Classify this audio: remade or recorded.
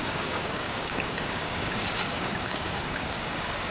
remade